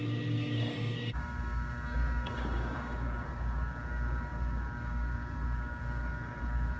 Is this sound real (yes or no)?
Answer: no